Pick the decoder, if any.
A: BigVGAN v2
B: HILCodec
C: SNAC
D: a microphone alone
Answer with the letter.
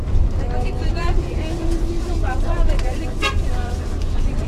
A